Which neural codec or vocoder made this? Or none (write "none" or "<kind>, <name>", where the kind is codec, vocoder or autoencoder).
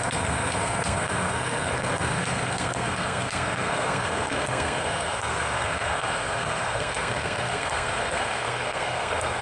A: codec, SNAC